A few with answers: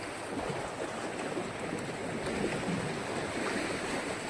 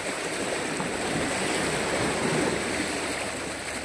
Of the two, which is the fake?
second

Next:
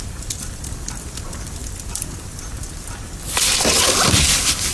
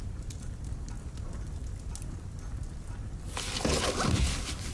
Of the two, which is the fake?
first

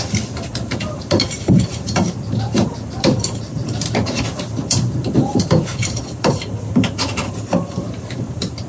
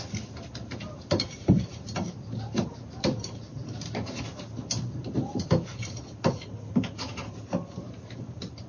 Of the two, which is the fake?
first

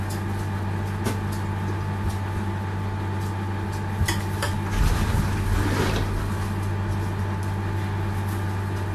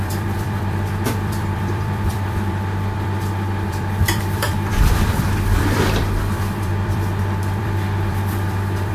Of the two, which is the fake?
second